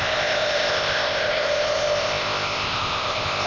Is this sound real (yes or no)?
no